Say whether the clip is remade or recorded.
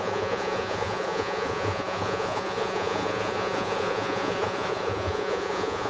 remade